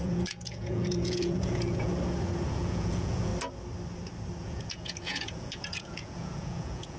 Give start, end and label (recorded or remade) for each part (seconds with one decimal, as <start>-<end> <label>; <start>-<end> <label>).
0.0-1.9 remade; 1.9-2.5 recorded; 2.5-3.3 remade; 3.3-4.4 recorded; 4.4-7.0 remade